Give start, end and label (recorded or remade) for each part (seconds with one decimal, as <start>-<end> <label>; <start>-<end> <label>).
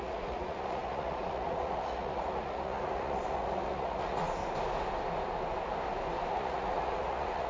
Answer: 0.0-4.4 remade; 4.4-6.3 recorded; 6.3-7.5 remade